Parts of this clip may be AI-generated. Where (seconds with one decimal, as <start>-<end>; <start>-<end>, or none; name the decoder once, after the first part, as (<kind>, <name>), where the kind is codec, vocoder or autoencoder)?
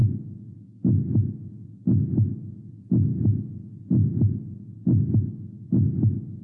3.1-5.1 (vocoder, Vocos)